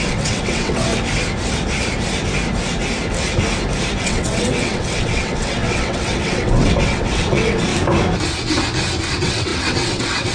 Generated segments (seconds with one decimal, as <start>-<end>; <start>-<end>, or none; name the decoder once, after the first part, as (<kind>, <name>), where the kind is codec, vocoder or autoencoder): 0.0-0.9 (vocoder, WaveNeXt); 4.0-7.7; 9.1-10.3